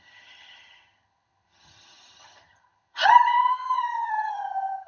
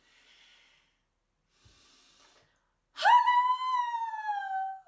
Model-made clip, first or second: first